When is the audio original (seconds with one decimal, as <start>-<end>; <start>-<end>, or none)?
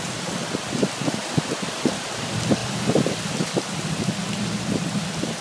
0.0-0.4; 1.7-2.6